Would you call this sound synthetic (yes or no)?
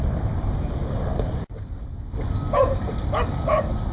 no